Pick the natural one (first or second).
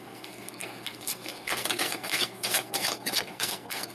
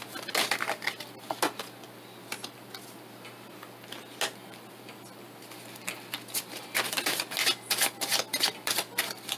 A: second